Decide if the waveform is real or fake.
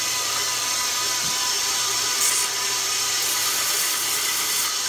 real